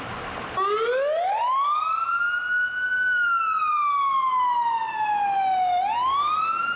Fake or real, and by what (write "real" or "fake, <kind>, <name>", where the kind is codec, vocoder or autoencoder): real